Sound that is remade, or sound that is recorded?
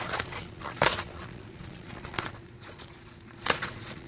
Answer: remade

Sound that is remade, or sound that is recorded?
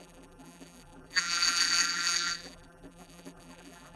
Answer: remade